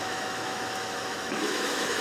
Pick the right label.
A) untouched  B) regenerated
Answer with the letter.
B